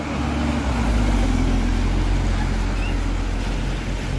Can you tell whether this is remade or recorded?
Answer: recorded